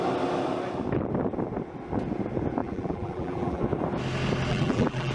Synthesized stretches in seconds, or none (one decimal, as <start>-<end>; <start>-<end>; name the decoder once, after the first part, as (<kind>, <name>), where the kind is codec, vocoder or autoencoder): 2.6-3.6 (vocoder, BigVGAN v2); 4.5-5.1